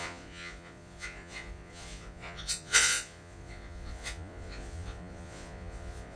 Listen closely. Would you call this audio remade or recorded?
remade